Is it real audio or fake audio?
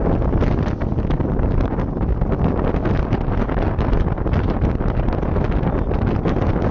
real